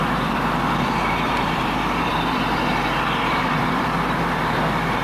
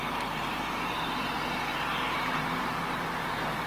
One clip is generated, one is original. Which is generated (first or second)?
first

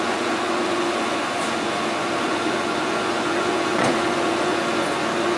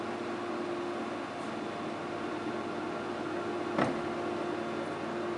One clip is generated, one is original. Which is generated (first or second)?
first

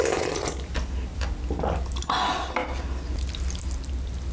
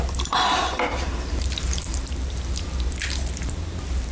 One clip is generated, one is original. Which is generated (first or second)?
second